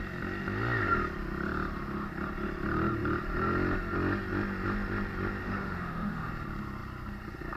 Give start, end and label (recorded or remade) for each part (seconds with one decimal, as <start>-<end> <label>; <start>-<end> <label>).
0.0-5.4 recorded; 5.4-6.3 remade; 6.3-7.6 recorded